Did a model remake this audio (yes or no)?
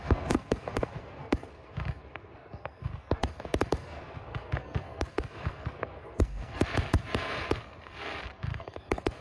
yes